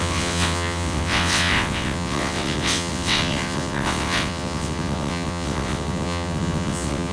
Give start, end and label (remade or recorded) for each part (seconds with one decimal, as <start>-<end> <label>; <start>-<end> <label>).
0.0-7.1 remade